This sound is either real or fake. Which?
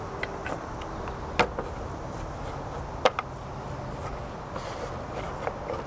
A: real